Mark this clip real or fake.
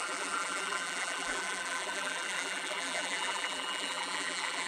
fake